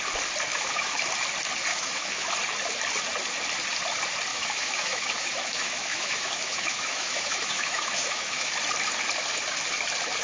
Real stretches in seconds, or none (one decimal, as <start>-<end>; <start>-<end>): 0.0-0.5; 1.1-1.7; 2.3-4.3; 8.5-10.2